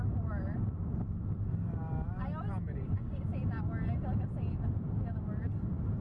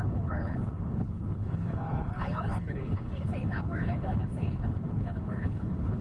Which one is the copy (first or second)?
second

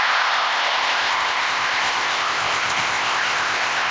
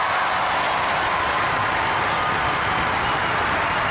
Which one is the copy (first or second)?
first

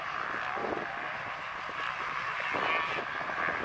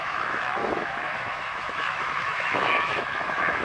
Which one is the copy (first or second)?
second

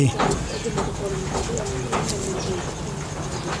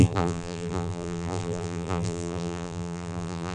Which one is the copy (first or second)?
second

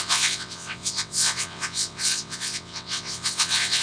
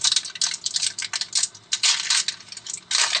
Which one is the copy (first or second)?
first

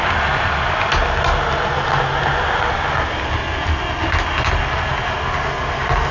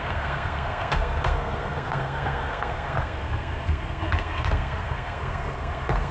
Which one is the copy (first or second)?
second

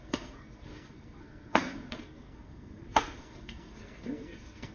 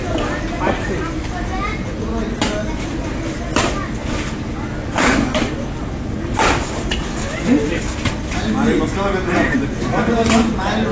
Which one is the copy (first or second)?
first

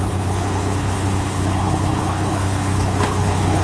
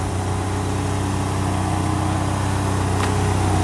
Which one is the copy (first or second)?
first